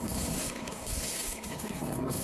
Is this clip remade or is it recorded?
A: remade